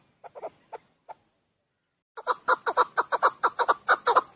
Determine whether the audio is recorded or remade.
recorded